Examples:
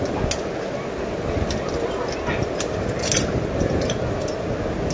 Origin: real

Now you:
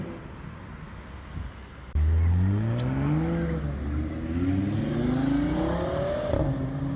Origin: real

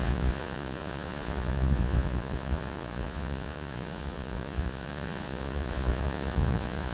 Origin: fake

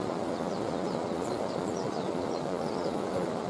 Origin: fake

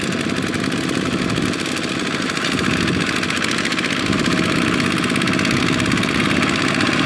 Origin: real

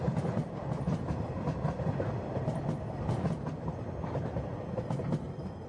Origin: real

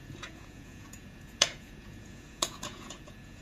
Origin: fake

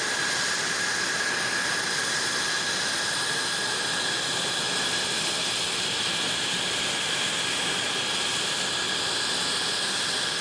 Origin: real